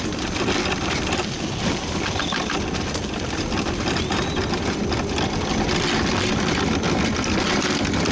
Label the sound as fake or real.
real